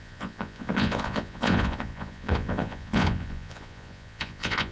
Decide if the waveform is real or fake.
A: fake